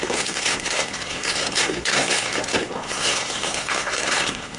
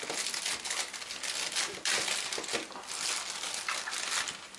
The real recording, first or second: second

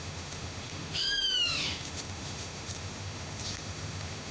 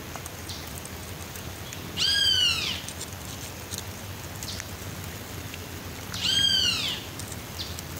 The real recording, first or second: second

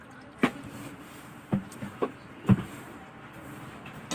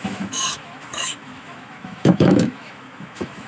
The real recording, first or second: first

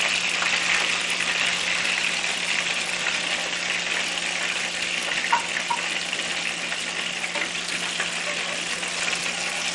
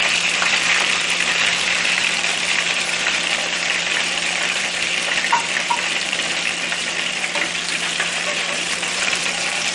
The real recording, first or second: first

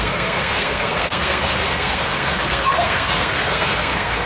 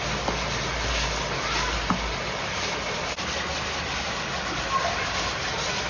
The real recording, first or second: second